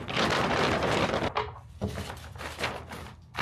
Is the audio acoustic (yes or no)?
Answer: yes